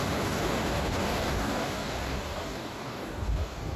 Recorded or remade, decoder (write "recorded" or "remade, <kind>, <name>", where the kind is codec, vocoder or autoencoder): remade, codec, DAC